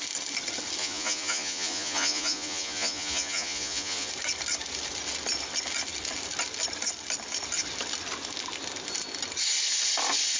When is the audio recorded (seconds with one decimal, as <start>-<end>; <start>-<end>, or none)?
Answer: 0.0-0.8; 4.1-10.4

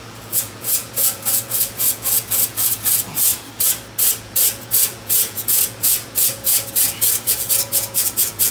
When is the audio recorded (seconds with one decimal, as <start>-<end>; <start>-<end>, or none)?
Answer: 3.3-4.2

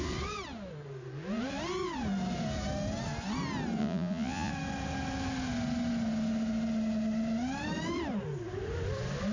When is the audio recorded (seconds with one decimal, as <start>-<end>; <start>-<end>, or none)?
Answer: 0.0-3.8; 4.5-9.3

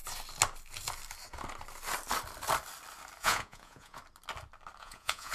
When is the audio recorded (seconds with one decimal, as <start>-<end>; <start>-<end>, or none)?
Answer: 0.0-3.2; 4.0-4.8

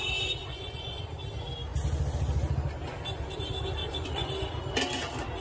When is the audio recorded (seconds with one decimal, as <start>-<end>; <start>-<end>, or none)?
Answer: 0.0-0.4; 1.2-3.8; 4.3-5.4

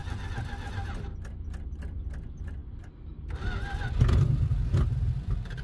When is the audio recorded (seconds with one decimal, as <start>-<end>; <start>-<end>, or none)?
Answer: 0.0-5.6